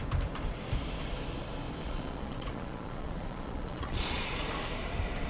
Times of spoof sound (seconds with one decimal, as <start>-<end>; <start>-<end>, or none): 1.8-4.5